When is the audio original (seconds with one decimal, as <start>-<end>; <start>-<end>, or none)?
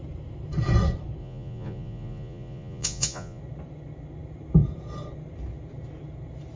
0.0-1.2; 3.4-6.6